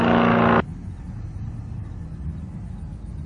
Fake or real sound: real